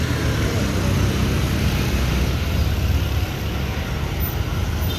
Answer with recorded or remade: recorded